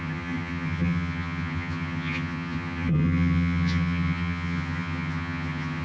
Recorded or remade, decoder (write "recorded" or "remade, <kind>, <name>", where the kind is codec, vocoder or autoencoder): remade, vocoder, HiFi-GAN